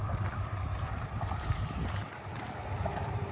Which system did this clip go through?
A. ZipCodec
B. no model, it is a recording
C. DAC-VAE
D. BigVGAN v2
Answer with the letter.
D